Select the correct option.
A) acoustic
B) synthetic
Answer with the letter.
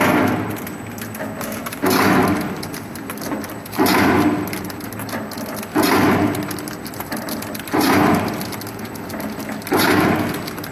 A